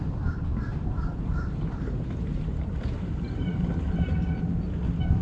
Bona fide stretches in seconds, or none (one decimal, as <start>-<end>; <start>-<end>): 0.0-0.7; 3.8-5.2